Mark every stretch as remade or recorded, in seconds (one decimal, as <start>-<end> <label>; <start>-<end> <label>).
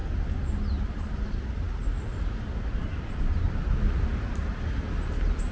0.0-5.5 recorded